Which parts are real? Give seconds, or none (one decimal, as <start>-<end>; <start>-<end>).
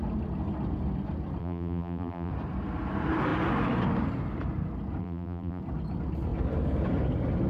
0.0-1.4; 2.3-5.0; 5.6-7.5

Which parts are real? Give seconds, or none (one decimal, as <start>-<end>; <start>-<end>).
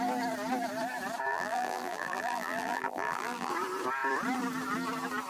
0.0-1.3; 3.5-5.3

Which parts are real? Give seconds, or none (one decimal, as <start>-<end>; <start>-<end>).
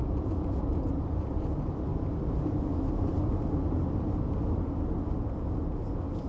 0.0-0.7; 2.2-6.3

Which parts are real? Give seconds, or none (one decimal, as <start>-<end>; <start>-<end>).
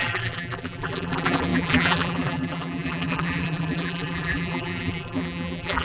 none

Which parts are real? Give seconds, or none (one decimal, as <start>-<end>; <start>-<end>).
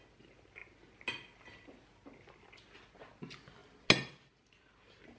0.0-5.2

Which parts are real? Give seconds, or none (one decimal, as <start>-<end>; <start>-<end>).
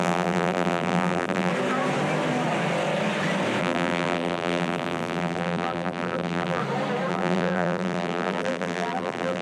1.5-3.6; 6.6-7.1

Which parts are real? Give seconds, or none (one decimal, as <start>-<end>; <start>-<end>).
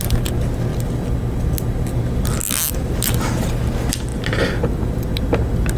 0.0-5.8